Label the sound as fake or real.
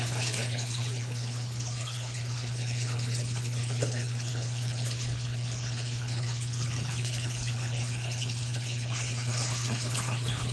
fake